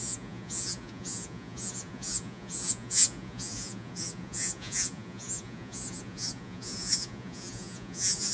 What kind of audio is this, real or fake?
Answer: fake